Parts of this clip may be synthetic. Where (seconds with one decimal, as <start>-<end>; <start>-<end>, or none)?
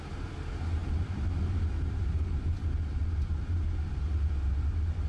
none